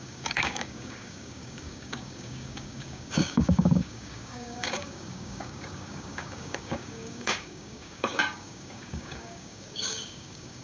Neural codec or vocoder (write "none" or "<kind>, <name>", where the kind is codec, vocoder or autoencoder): codec, DAC